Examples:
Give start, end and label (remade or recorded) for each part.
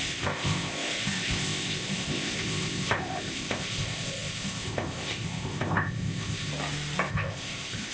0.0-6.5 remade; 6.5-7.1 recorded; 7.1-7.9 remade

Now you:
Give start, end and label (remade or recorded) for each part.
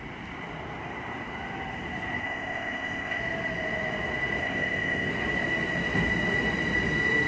0.0-2.2 recorded; 2.2-3.2 remade; 3.2-4.4 recorded; 4.4-5.1 remade; 5.1-7.3 recorded